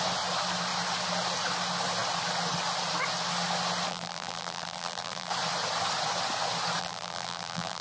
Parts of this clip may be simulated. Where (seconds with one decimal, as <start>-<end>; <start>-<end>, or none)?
3.9-5.3; 6.8-7.8